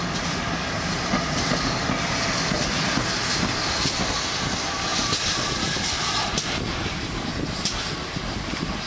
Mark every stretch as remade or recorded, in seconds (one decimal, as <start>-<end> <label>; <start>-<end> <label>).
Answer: 0.0-8.9 recorded